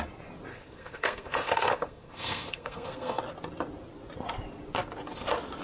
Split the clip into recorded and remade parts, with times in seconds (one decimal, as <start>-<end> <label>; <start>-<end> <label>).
0.0-0.5 recorded; 0.5-3.2 remade; 3.2-5.6 recorded